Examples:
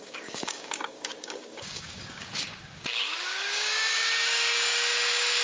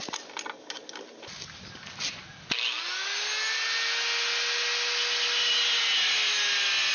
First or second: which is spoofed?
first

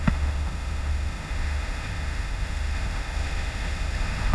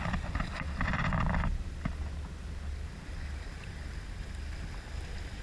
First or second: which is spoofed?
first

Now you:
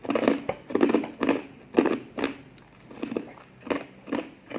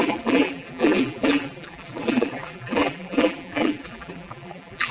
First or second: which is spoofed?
second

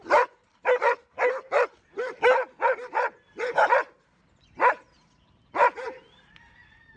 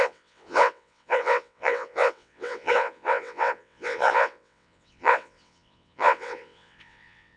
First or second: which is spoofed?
second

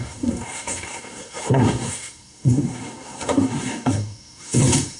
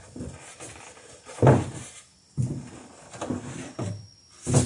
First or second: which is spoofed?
first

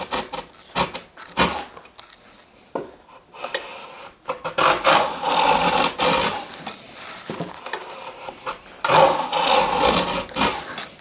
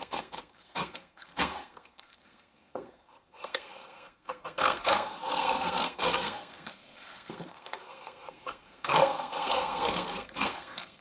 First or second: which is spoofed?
second